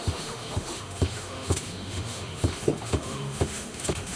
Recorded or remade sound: remade